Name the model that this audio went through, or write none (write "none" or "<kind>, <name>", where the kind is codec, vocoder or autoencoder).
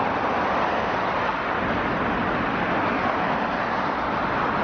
none